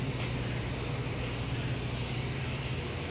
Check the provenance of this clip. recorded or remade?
recorded